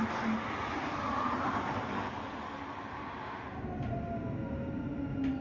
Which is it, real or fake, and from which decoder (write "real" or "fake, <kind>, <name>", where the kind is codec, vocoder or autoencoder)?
real